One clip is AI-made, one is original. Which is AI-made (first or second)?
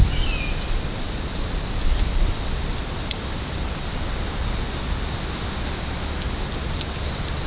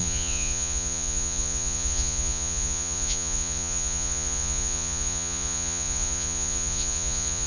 second